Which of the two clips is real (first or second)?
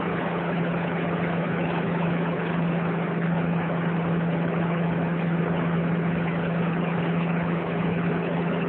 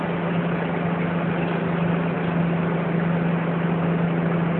second